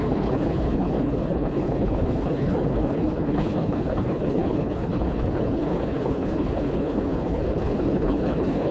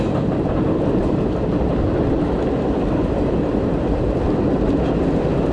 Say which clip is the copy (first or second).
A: first